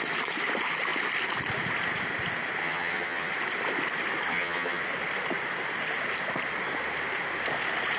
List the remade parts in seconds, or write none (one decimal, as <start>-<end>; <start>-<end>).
2.6-3.3; 4.3-4.8